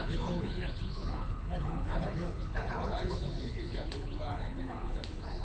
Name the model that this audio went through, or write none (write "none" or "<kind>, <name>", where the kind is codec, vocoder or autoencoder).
codec, HILCodec